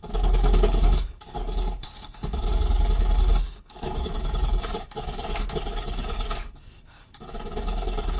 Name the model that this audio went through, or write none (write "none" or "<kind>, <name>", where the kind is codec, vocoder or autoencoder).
codec, DAC